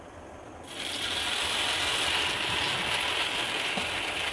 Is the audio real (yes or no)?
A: yes